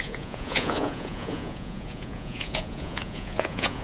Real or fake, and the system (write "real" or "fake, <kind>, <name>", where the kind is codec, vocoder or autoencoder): fake, vocoder, Vocos